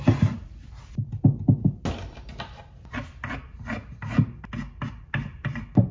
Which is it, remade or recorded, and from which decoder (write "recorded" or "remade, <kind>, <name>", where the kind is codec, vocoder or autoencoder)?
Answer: recorded